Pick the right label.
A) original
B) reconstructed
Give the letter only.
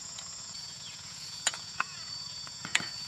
B